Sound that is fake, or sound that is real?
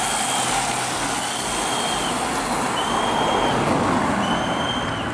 real